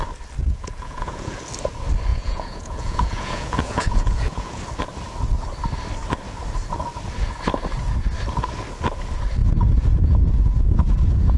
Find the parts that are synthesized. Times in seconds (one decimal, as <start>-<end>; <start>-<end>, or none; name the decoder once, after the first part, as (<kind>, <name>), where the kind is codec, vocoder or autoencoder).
0.4-1.4 (vocoder, Vocos); 2.1-4.6; 9.4-11.4